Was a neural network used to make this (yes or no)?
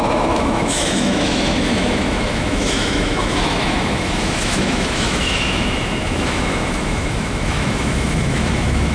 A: yes